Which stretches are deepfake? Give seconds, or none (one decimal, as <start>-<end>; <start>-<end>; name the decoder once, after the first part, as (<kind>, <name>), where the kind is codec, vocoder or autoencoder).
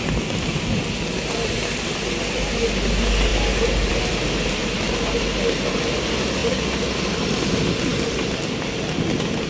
none